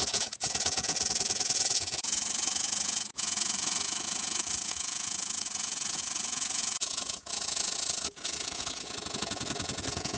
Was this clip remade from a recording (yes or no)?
yes